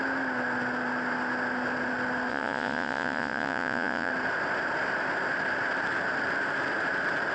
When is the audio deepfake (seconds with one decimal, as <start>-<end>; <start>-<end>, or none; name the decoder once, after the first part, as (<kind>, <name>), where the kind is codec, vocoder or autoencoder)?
2.3-4.1 (vocoder, Vocos)